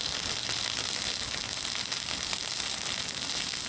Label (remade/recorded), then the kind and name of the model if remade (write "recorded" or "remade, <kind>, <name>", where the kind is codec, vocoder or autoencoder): recorded